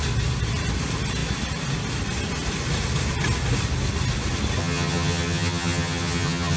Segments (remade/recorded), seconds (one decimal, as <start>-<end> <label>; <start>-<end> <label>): 0.0-4.6 recorded; 4.6-6.6 remade